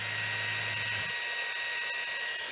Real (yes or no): yes